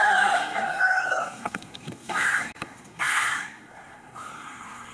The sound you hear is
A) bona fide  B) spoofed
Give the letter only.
B